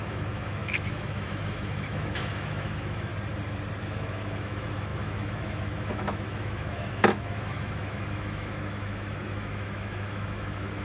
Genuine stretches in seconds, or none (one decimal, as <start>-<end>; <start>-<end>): 3.1-3.8